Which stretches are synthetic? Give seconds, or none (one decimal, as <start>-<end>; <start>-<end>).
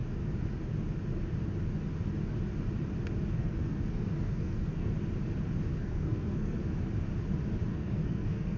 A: 3.4-4.9; 5.7-6.6; 7.7-8.6